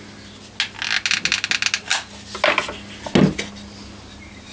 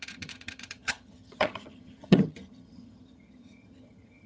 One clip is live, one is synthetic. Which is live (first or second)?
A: first